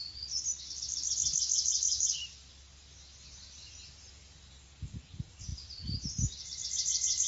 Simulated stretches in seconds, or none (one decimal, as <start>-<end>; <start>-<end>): none